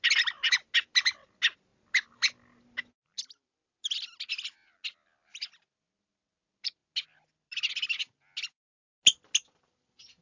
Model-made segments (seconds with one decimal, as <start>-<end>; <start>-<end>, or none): none

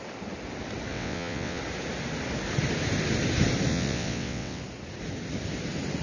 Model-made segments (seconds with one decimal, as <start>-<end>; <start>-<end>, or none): 0.9-1.6; 3.7-4.6

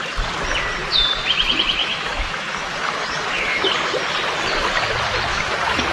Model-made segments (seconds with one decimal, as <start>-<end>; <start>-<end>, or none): 1.8-3.7; 5.3-5.9